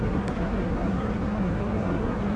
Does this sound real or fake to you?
fake